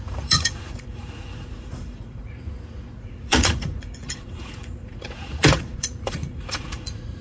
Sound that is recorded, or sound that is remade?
remade